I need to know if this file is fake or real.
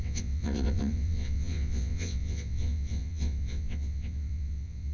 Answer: fake